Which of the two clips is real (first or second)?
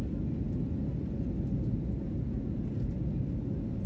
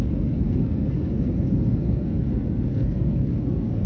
first